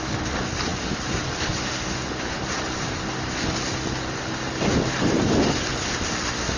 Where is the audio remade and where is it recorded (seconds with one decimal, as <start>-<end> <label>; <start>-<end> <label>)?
0.0-6.6 recorded